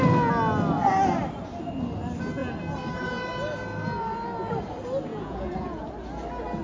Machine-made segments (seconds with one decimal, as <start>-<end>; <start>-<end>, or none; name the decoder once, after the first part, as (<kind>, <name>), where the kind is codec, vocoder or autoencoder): 5.1-5.9 (vocoder, Vocos)